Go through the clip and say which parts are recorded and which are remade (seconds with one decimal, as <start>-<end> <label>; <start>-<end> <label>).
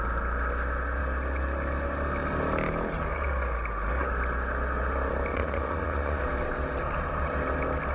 0.0-5.3 recorded; 5.3-6.2 remade; 6.2-7.9 recorded